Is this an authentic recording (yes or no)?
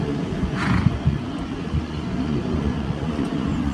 no